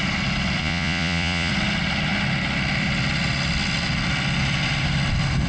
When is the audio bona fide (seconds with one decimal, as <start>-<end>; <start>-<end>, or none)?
0.0-0.6; 1.5-5.5